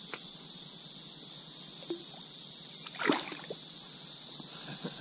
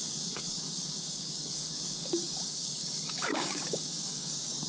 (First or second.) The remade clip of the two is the second